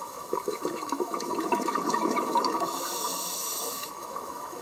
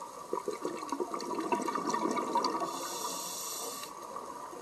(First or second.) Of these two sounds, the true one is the second